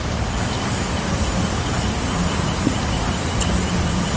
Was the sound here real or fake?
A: real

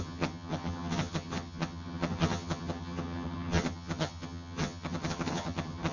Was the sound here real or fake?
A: fake